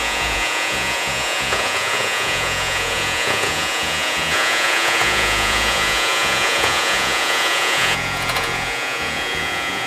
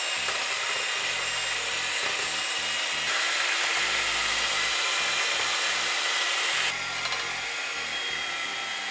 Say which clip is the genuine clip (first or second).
second